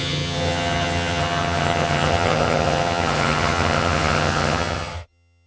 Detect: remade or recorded remade